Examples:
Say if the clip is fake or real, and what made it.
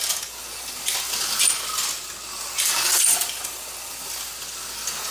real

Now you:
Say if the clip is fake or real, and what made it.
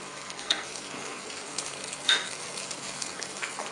fake, codec, SNAC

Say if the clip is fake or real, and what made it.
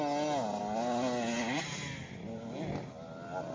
real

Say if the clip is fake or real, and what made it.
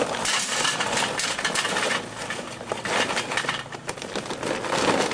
real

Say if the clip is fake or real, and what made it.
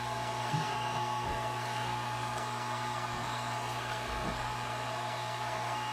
fake, codec, SNAC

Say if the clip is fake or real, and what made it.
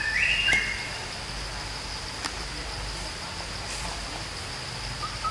real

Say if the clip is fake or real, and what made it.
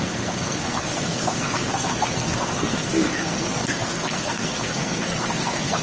fake, codec, SNAC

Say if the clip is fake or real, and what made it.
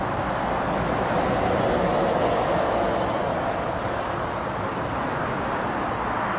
real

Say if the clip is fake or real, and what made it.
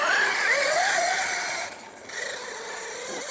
real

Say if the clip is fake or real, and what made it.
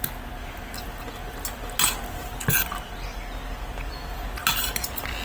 real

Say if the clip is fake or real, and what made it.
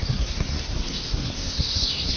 fake, codec, SNAC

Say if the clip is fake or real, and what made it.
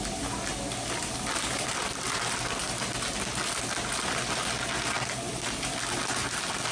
real